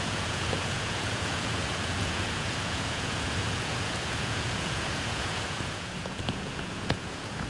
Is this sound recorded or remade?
remade